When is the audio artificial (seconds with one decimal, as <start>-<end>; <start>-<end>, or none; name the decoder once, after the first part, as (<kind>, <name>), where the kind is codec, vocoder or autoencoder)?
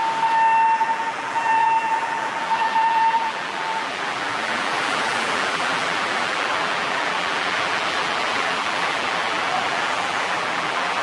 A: 0.8-11.0 (vocoder, BigVGAN v2)